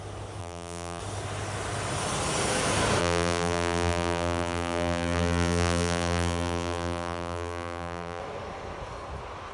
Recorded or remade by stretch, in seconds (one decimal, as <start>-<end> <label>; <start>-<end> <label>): 0.0-0.4 recorded; 0.4-1.0 remade; 1.0-3.0 recorded; 3.0-8.2 remade; 8.2-9.5 recorded